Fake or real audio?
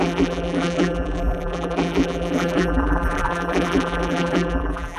fake